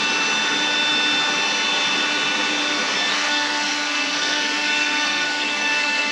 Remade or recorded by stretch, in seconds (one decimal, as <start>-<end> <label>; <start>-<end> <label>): 0.0-3.1 recorded; 3.1-6.1 remade